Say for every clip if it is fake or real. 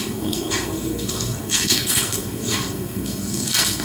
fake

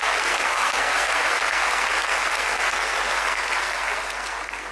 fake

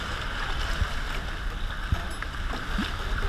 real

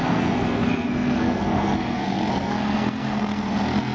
fake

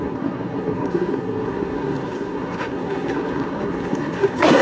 fake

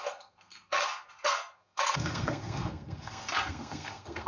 fake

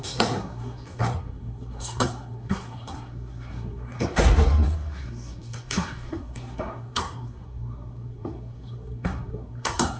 fake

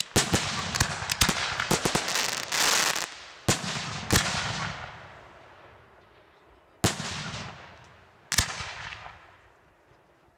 real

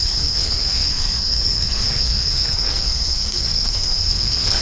fake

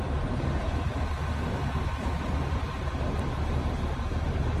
real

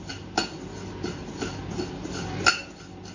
real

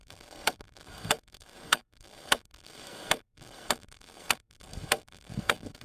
fake